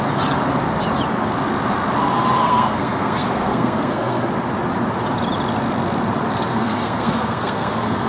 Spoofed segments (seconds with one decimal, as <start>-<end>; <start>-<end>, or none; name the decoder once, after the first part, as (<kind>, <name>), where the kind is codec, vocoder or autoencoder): 2.4-4.3 (codec, SNAC); 6.5-8.1